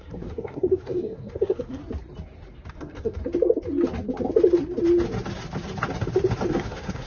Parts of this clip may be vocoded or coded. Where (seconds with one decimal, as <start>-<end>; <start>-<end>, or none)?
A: 0.0-1.8; 2.7-3.2; 6.5-7.1